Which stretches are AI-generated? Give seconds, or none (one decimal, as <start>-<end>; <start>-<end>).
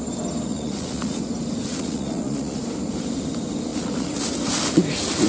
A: 0.5-1.2; 1.7-2.6; 3.7-4.2